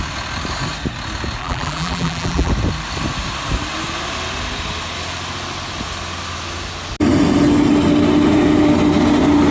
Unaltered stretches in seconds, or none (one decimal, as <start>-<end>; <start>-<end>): 0.0-1.4; 2.5-9.5